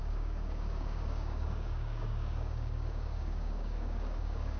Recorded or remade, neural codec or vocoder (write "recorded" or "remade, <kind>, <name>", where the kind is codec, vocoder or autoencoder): remade, codec, DAC